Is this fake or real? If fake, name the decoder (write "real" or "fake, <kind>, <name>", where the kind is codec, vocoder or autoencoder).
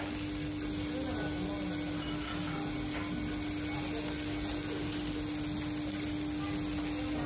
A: real